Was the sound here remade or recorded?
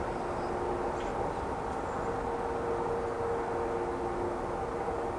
recorded